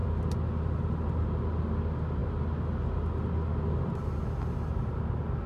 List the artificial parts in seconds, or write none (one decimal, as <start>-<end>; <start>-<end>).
none